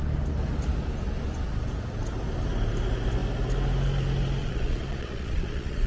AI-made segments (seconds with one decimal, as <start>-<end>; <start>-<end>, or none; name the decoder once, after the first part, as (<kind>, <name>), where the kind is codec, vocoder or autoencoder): 4.4-5.9 (vocoder, Vocos)